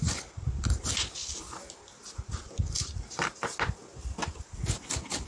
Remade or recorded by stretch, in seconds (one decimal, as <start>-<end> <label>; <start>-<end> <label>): 0.0-5.3 recorded